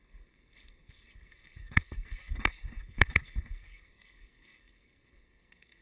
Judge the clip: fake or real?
fake